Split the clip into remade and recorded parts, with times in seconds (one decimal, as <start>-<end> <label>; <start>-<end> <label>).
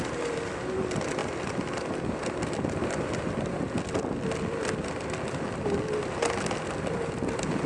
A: 0.0-7.7 recorded